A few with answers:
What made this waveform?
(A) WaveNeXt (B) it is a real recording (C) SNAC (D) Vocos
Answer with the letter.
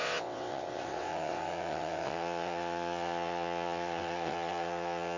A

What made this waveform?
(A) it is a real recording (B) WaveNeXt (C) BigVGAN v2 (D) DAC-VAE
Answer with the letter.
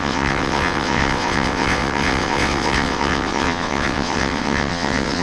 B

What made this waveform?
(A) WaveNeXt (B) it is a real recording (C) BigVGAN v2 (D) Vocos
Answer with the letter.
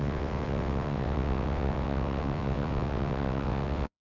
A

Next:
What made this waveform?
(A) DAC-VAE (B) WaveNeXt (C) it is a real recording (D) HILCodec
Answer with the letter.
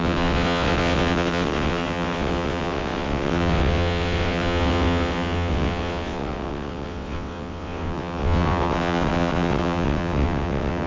B